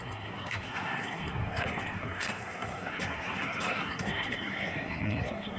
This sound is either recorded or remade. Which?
remade